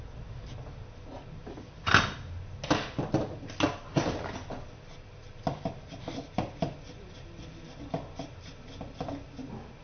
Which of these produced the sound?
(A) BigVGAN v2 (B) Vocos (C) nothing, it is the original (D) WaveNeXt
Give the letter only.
C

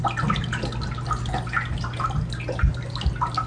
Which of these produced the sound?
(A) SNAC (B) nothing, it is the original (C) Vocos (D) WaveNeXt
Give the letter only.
B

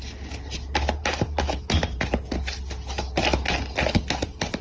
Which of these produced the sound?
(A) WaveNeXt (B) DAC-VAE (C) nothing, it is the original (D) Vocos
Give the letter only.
C